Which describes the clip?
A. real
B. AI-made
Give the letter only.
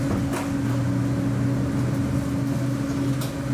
A